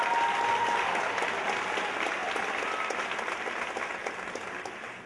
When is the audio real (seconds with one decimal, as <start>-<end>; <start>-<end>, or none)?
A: 0.0-5.1